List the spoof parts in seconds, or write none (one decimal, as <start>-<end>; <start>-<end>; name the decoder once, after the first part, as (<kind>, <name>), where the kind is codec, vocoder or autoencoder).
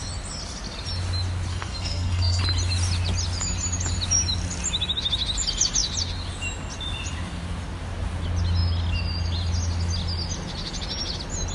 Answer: 1.5-2.4 (codec, SNAC)